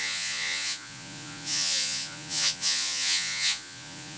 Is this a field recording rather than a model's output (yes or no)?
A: no